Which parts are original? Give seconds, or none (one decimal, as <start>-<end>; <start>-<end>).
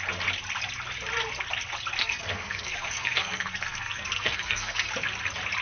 0.0-2.0; 4.9-5.6